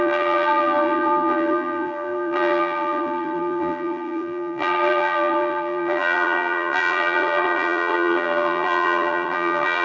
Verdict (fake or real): fake